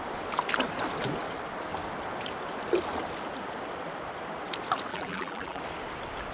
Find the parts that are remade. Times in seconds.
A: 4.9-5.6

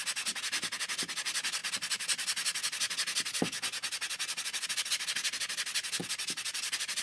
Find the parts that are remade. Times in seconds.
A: 6.0-7.0

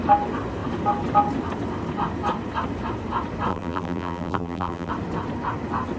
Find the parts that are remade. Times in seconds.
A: 3.5-4.9

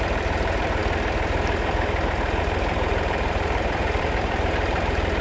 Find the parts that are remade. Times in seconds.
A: 0.0-0.8; 2.4-5.2

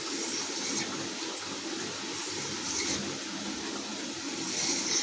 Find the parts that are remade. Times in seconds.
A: 0.0-3.9; 4.6-5.0

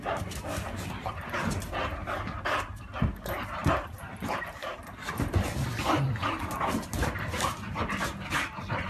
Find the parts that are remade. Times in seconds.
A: 0.0-3.6; 4.3-8.9

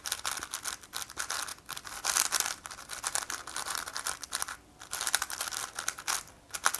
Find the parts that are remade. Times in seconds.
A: 1.5-5.6